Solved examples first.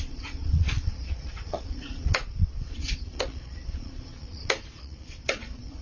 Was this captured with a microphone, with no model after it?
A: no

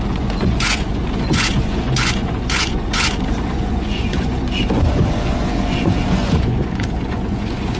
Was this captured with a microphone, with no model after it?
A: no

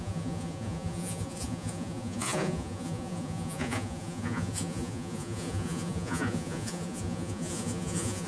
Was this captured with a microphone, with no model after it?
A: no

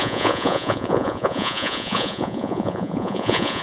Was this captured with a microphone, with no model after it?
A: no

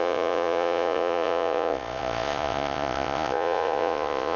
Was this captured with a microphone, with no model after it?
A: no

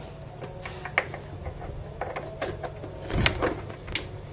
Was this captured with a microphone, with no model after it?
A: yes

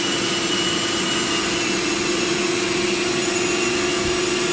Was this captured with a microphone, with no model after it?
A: yes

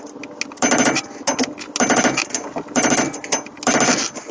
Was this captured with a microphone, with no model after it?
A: yes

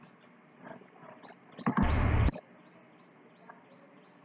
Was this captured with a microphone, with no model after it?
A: yes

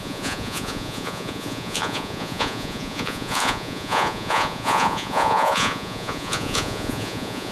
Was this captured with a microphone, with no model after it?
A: no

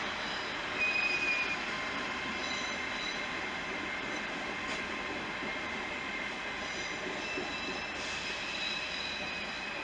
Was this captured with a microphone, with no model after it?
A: yes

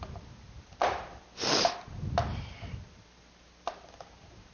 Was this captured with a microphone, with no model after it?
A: yes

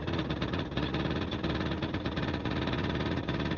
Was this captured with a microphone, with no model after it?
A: no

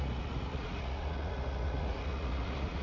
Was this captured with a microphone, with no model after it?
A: no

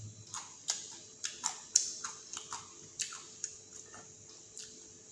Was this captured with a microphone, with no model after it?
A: yes